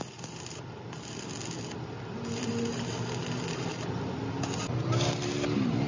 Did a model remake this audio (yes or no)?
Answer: no